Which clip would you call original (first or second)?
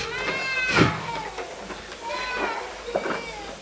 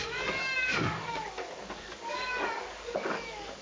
first